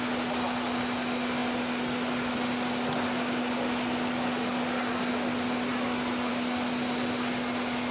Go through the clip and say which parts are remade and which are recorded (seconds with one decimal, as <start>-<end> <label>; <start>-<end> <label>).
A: 0.0-7.9 recorded